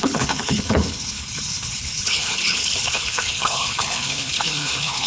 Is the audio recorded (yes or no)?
no